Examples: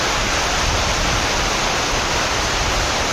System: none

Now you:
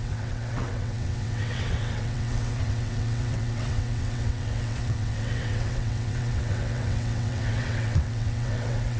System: vocoder, WaveNeXt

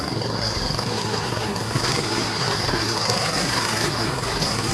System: codec, SNAC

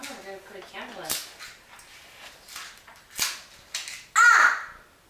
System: none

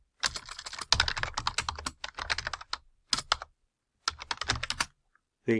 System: none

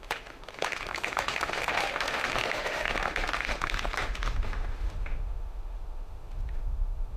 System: autoencoder, DAC-VAE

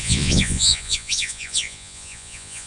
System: vocoder, Vocos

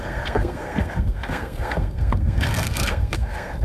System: codec, SNAC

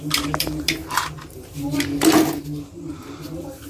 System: none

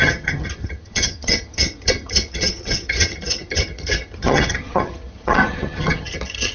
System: vocoder, HiFi-GAN